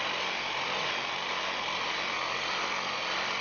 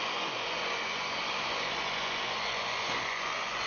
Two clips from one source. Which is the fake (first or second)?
second